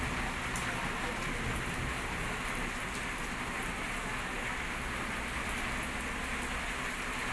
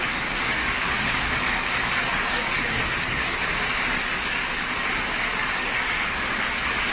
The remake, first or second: second